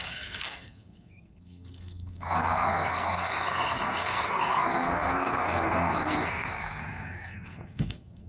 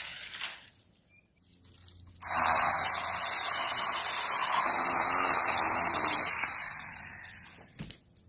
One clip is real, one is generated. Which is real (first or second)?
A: second